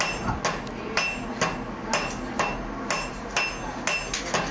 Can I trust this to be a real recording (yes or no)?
yes